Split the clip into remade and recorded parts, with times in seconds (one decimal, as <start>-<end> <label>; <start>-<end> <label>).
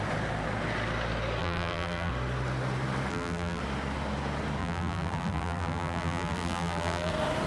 0.0-1.4 recorded; 1.4-2.1 remade; 2.1-3.1 recorded; 3.1-3.6 remade; 3.6-4.6 recorded; 4.6-7.1 remade; 7.1-7.5 recorded